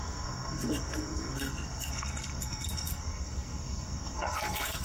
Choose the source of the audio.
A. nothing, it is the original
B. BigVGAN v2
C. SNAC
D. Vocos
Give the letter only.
C